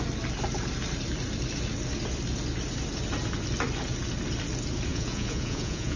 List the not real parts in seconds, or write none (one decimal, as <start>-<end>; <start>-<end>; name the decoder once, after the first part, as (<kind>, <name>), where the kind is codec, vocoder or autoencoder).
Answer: 4.9-6.0 (vocoder, Vocos)

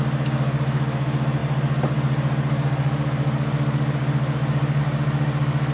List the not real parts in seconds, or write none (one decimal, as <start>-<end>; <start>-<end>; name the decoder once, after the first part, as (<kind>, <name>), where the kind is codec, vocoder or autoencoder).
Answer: none

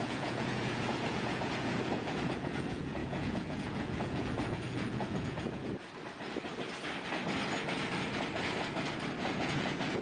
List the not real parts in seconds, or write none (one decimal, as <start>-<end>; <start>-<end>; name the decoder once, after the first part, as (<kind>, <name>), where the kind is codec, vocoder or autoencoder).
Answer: 0.0-5.6 (vocoder, Vocos); 9.2-10.0

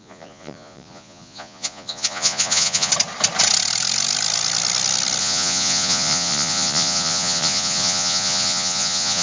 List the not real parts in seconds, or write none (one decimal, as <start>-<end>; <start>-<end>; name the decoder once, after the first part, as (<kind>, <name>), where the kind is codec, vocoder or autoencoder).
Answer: 0.0-2.9 (vocoder, Vocos); 5.2-9.2

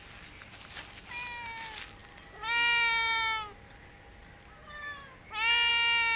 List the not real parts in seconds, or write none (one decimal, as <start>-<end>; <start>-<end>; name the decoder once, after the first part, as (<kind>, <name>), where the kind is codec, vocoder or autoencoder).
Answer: none

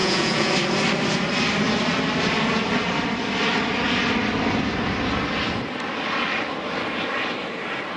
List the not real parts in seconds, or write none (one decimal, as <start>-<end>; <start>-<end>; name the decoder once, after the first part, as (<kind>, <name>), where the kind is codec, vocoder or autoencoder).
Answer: 0.0-0.5 (vocoder, Vocos)